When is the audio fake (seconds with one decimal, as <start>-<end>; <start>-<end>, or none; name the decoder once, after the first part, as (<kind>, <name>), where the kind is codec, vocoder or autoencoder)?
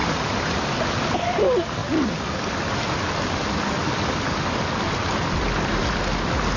0.0-0.7 (vocoder, BigVGAN v2)